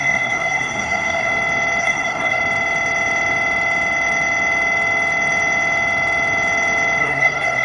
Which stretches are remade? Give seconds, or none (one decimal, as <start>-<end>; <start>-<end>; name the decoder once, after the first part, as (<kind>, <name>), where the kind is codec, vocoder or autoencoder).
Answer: 0.0-1.3 (codec, SNAC); 1.8-2.4; 7.0-7.6